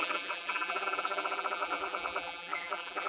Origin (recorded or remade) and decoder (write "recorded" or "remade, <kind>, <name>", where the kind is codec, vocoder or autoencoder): remade, vocoder, BigVGAN v2